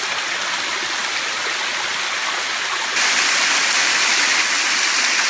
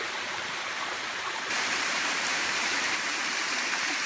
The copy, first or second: second